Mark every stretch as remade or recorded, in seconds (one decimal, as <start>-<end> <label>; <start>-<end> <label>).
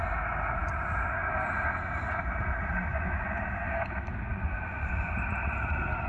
0.0-2.9 recorded; 2.9-3.4 remade; 3.4-4.3 recorded; 4.3-5.1 remade; 5.1-6.1 recorded